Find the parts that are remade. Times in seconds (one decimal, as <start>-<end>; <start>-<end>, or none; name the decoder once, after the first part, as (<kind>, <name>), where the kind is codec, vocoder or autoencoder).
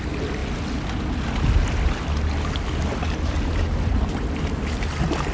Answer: none